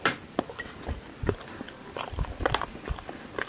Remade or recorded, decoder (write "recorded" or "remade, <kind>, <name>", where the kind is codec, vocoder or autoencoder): recorded